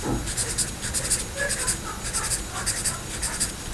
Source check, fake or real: real